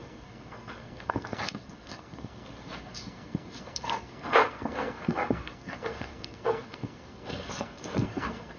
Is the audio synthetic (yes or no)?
yes